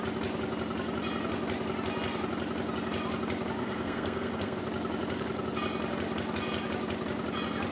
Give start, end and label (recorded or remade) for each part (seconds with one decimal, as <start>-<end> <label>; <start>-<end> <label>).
0.0-3.6 recorded; 3.6-4.6 remade; 4.6-7.7 recorded